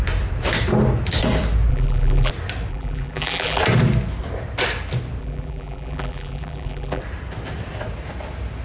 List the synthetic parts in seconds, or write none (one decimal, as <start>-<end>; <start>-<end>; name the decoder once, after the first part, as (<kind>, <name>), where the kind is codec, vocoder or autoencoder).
1.7-2.3 (vocoder, BigVGAN v2); 2.7-3.6; 5.2-7.0